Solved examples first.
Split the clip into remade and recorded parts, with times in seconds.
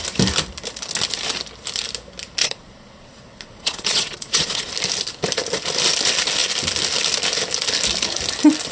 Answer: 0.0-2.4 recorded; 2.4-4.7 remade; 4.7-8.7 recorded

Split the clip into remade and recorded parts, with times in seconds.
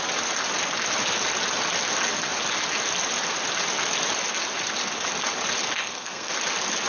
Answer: 0.0-5.8 recorded; 5.8-6.3 remade; 6.3-6.9 recorded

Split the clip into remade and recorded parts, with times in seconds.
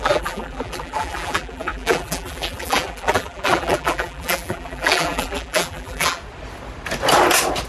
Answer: 0.0-6.2 remade; 6.2-7.7 recorded